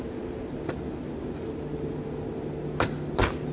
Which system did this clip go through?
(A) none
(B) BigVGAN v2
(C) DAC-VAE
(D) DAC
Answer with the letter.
A